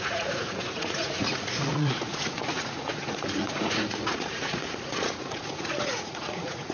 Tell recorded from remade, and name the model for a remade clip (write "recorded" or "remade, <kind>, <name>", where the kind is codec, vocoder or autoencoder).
remade, vocoder, Vocos